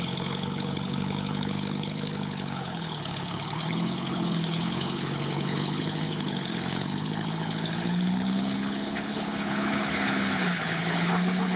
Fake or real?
fake